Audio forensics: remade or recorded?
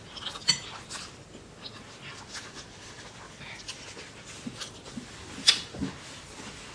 recorded